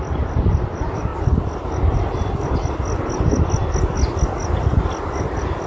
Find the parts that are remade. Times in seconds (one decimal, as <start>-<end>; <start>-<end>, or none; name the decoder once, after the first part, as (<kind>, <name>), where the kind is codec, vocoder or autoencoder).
none